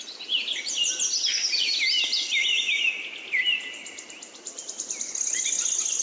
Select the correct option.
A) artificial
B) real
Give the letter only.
B